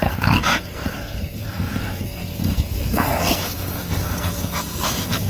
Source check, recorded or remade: remade